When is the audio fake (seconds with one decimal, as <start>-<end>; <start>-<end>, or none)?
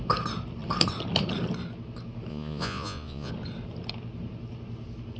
2.3-3.3